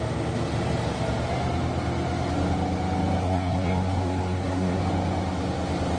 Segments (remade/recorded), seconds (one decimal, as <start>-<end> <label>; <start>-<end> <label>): 0.0-3.2 recorded; 3.2-4.8 remade; 4.8-6.0 recorded